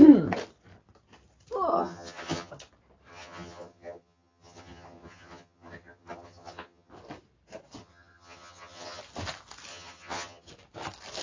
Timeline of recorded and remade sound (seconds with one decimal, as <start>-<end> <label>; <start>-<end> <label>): 0.0-1.7 recorded; 1.7-2.5 remade; 2.5-3.1 recorded; 3.1-6.9 remade; 6.9-7.8 recorded; 7.8-9.0 remade; 9.0-9.7 recorded; 9.7-10.5 remade; 10.5-11.2 recorded